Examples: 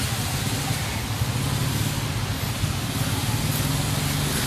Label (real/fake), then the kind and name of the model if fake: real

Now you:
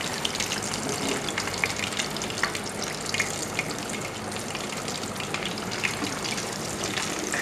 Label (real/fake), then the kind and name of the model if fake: real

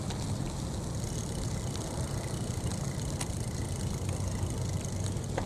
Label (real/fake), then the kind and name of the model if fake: real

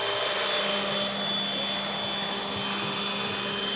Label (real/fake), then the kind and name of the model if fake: real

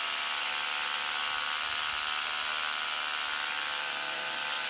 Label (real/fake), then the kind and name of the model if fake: fake, vocoder, BigVGAN v2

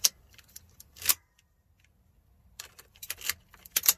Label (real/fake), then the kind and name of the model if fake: fake, vocoder, BigVGAN v2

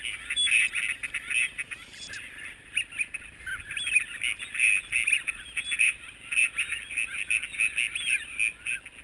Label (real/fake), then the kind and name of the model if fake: real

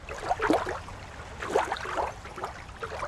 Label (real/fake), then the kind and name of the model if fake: real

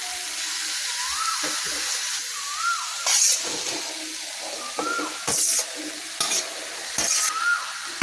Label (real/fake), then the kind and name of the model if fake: real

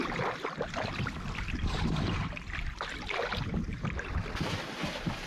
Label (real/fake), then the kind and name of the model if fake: fake, vocoder, BigVGAN v2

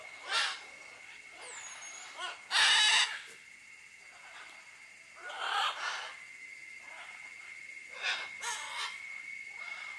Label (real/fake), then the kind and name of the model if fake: real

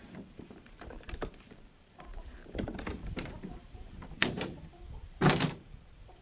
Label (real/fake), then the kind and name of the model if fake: fake, vocoder, BigVGAN v2